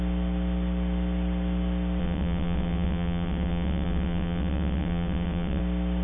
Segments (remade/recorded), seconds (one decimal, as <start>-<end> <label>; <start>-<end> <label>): 0.0-2.0 recorded; 2.0-5.6 remade; 5.6-6.0 recorded